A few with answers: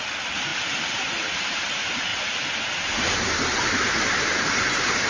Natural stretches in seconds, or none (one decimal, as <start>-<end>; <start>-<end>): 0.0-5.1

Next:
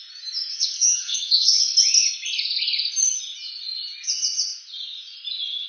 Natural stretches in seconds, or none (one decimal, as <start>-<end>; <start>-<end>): 0.0-0.5; 1.6-5.7

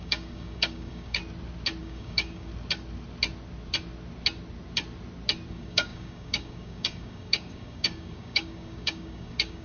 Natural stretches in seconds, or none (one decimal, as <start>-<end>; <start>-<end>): 1.2-1.8; 2.5-5.5

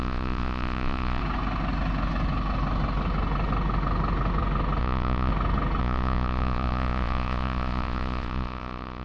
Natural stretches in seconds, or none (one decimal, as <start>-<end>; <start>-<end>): 1.2-4.8; 5.3-5.8

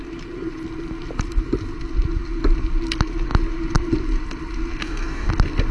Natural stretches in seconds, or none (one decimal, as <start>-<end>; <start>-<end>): 0.0-4.8; 5.3-5.7